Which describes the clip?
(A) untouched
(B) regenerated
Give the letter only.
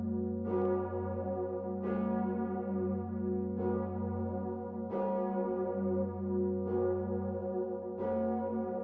A